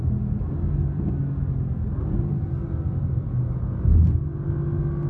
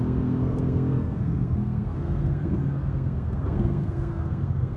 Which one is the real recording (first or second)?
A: first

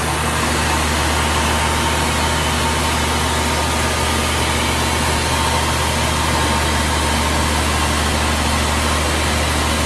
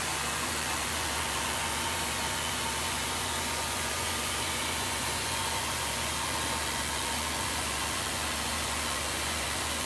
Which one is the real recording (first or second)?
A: first